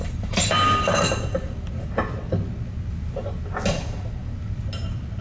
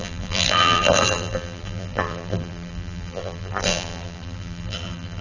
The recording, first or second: first